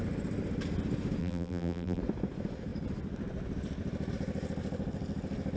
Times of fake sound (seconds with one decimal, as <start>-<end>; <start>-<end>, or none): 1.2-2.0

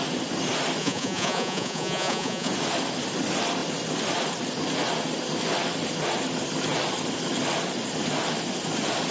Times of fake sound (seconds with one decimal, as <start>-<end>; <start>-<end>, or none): 0.8-2.5

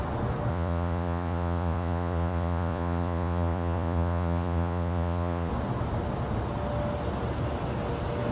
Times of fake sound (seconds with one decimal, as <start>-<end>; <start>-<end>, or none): 0.5-5.5